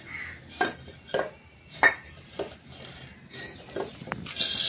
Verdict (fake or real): real